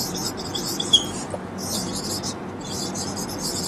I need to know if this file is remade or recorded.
recorded